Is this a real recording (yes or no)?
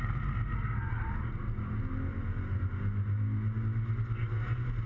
yes